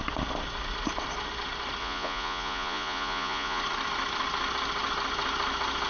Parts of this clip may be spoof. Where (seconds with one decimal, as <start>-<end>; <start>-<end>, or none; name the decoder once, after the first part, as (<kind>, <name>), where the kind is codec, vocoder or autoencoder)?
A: 1.8-3.6 (vocoder, Vocos)